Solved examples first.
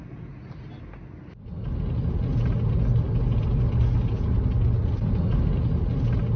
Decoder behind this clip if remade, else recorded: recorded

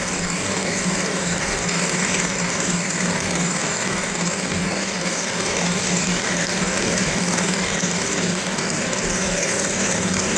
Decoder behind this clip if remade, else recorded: remade, codec, DAC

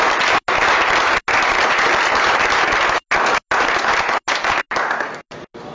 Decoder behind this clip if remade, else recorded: recorded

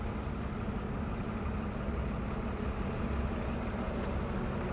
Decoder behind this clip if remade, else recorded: recorded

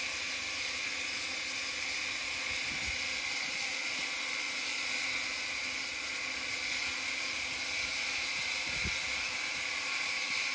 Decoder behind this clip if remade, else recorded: recorded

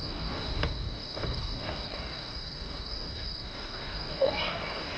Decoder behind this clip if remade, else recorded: remade, codec, DAC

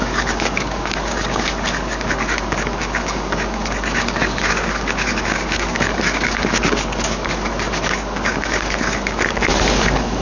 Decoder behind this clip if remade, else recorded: remade, codec, DAC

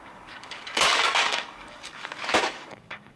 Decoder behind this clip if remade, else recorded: remade, codec, DAC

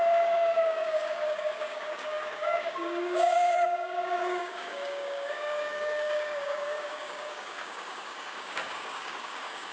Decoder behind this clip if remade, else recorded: remade, codec, DAC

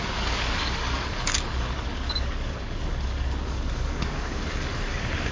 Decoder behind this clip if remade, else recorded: remade, codec, DAC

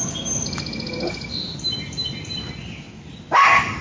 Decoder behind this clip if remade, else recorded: recorded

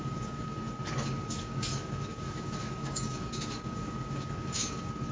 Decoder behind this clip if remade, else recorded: remade, codec, DAC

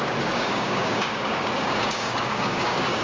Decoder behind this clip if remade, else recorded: remade, codec, DAC